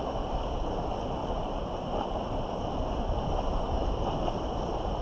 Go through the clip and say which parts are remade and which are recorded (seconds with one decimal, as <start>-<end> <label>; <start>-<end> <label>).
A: 0.0-1.2 recorded; 1.2-4.2 remade; 4.2-5.0 recorded